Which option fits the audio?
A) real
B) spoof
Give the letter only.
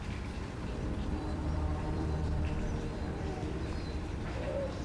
B